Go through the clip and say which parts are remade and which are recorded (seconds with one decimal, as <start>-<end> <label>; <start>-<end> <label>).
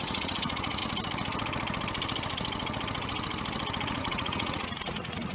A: 0.0-0.8 remade; 0.8-4.0 recorded; 4.0-5.3 remade